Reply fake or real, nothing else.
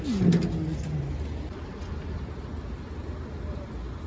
real